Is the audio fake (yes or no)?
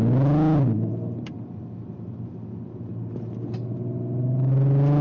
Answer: no